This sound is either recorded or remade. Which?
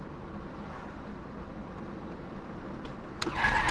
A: recorded